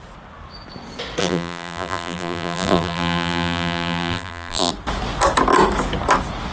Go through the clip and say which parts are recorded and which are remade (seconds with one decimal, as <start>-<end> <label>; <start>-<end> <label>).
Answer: 0.0-1.2 recorded; 1.2-4.7 remade; 4.7-6.5 recorded